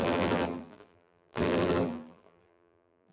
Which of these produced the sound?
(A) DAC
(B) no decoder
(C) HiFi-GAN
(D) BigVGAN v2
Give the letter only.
D